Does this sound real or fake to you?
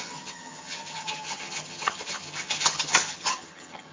fake